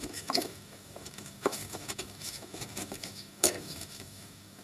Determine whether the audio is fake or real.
fake